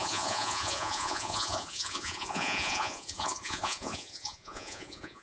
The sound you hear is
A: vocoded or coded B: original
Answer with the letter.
A